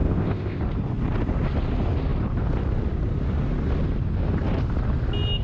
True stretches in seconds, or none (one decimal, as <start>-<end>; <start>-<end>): 0.6-5.4